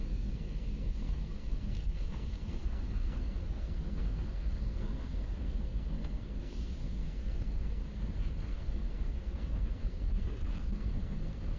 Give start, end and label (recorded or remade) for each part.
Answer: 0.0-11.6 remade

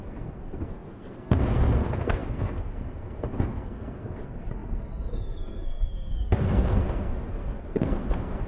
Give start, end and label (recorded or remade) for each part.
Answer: 0.0-8.5 remade

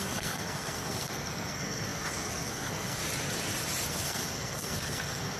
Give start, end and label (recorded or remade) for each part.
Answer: 0.0-3.0 remade; 3.0-3.9 recorded; 3.9-5.4 remade

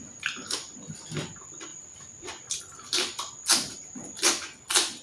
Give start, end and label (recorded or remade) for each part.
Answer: 0.0-5.0 recorded

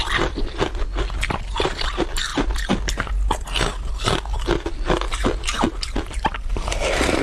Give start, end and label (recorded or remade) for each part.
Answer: 0.0-2.3 remade; 2.3-4.0 recorded; 4.0-7.2 remade

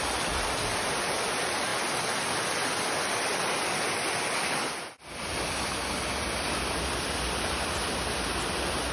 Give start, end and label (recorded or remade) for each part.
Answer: 0.0-8.9 recorded